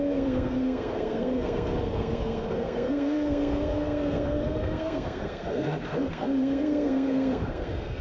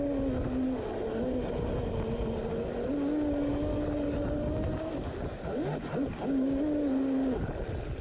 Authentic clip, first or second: second